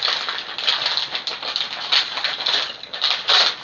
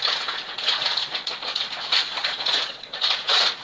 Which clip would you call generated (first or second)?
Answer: second